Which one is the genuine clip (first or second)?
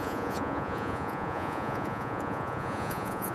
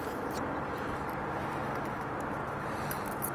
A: second